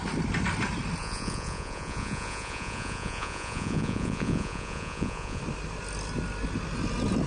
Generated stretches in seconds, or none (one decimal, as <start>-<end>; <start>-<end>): 1.0-5.4